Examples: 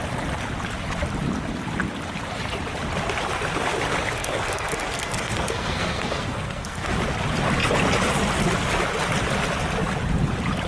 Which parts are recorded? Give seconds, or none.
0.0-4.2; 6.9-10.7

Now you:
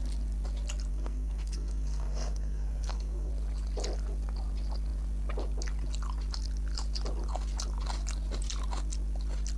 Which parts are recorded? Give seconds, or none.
0.0-0.9; 3.3-9.6

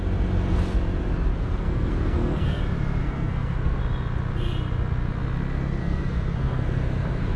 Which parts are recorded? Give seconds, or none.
0.0-1.3; 2.6-3.0; 3.8-5.8

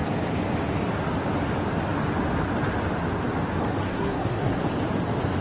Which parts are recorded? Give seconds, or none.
0.0-3.8; 4.6-5.4